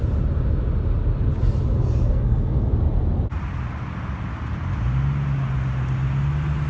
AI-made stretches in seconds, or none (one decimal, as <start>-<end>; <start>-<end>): 2.1-2.7